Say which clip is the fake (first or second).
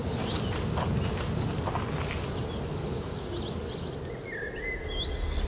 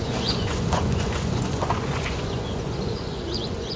second